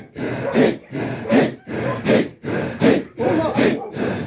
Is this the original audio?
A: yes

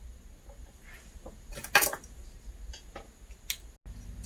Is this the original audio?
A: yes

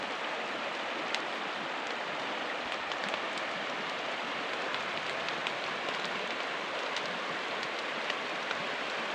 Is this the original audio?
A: yes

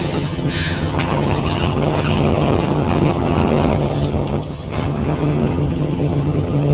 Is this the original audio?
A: no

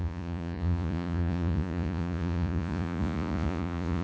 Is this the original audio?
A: no